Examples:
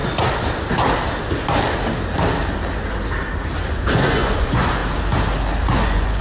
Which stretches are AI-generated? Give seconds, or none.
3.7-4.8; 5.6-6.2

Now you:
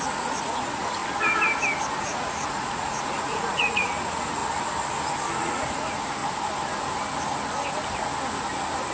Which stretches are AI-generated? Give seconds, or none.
0.0-1.0; 2.0-4.4; 5.4-6.2

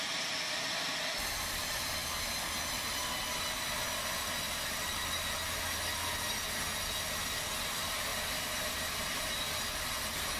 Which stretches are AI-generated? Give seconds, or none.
none

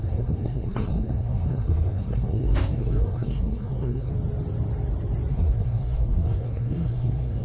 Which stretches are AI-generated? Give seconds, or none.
0.0-4.1; 5.3-7.4

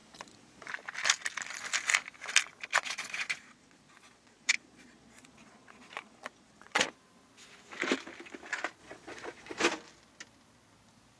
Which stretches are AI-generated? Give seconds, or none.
0.0-0.7; 2.7-6.9; 8.8-9.6

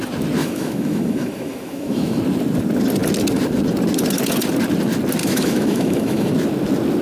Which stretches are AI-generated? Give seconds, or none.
0.4-2.2; 5.2-6.3

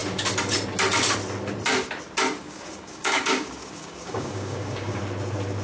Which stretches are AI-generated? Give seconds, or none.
2.4-5.0